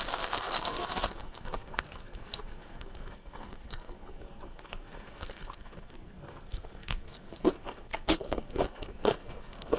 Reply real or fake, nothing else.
fake